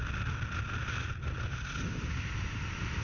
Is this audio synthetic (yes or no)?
no